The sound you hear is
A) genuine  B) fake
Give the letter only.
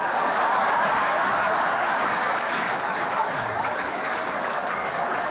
B